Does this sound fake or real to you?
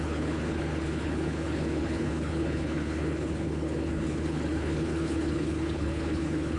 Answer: fake